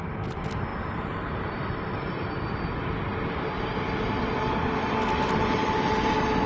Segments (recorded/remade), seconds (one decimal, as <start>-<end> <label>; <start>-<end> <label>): 0.0-0.7 recorded; 0.7-2.6 remade; 2.6-3.1 recorded; 3.1-4.0 remade; 4.0-6.5 recorded